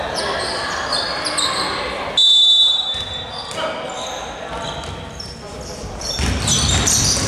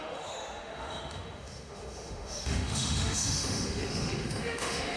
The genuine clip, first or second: first